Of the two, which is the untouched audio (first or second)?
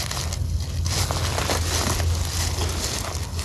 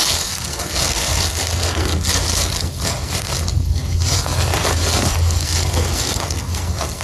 first